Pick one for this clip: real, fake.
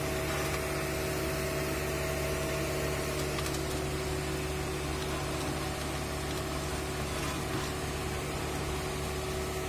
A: real